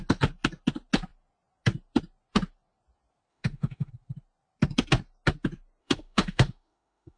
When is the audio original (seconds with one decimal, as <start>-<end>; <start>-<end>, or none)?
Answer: 0.0-3.3; 3.9-5.8